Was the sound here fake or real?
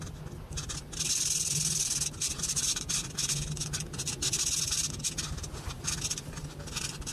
real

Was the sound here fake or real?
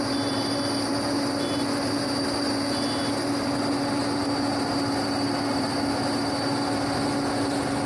real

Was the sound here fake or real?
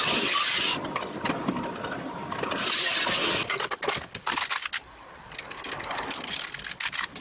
real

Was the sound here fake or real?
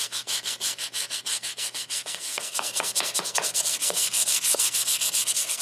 fake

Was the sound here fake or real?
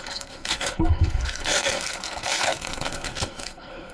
fake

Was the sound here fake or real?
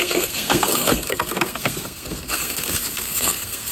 fake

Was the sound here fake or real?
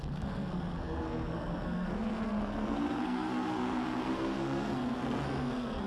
fake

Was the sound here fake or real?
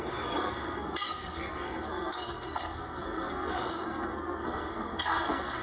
fake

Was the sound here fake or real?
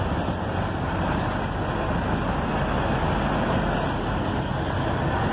real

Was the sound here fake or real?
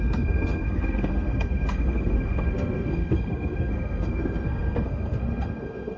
fake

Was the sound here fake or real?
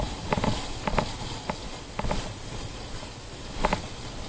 real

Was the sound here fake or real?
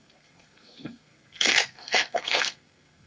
fake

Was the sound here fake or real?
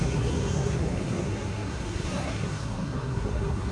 fake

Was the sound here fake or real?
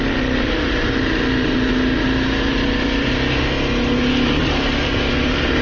real